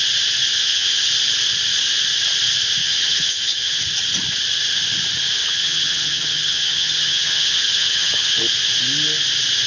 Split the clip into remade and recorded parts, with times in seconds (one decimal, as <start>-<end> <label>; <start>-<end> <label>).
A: 0.0-0.6 recorded; 0.6-1.1 remade; 1.1-2.8 recorded; 2.8-3.8 remade; 3.8-5.4 recorded; 5.4-8.4 remade; 8.4-9.7 recorded